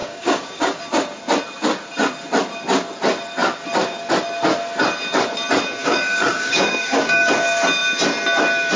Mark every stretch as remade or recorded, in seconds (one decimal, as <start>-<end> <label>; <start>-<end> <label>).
0.0-0.8 remade; 0.8-5.8 recorded; 5.8-7.3 remade; 7.3-8.8 recorded